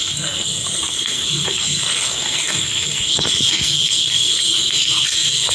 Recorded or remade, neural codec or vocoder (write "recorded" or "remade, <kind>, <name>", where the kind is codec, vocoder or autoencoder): remade, codec, SNAC